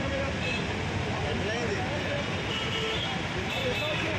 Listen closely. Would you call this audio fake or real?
fake